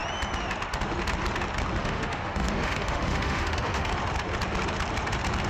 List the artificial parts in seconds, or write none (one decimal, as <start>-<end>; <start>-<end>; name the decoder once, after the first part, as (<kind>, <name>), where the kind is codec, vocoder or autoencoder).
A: 1.8-3.9 (autoencoder, DAC-VAE)